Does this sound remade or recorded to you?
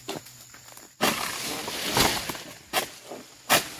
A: recorded